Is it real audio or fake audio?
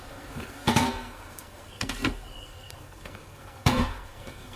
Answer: fake